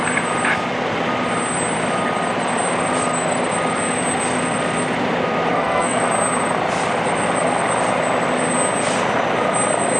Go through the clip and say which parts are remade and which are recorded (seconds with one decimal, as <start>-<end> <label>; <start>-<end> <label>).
0.0-5.5 recorded; 5.5-6.0 remade; 6.0-10.0 recorded